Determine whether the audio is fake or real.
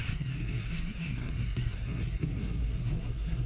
fake